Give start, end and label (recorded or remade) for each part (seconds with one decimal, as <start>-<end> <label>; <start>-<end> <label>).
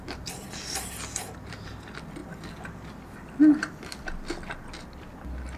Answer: 0.0-5.6 recorded